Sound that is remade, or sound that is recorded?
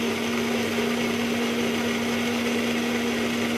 recorded